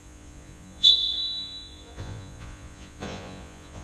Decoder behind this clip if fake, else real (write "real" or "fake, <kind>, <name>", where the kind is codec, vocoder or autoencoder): fake, vocoder, Vocos